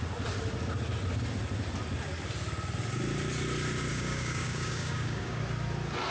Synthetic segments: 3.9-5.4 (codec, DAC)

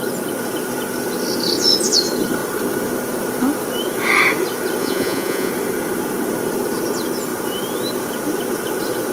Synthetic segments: 4.8-5.5 (vocoder, Vocos)